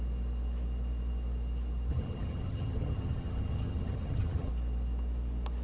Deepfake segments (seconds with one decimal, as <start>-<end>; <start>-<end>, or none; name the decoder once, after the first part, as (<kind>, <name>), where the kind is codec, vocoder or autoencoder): 1.9-4.5 (vocoder, HiFi-GAN)